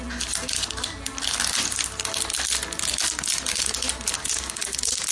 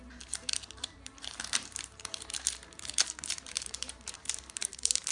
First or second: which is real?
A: first